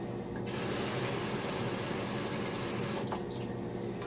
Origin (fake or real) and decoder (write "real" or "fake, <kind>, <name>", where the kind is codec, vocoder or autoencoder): real